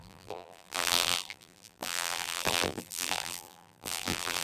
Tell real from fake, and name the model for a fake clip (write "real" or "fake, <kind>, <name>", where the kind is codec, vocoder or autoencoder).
fake, vocoder, BigVGAN v2